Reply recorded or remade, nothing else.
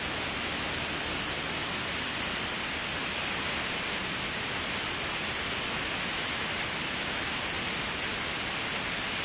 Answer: recorded